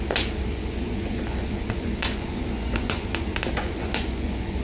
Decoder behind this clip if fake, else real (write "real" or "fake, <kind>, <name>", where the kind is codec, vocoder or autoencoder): fake, vocoder, Vocos